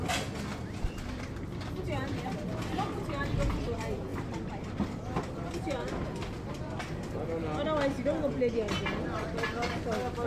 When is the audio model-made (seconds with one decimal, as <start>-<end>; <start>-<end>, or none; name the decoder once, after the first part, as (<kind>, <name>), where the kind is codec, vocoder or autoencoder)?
none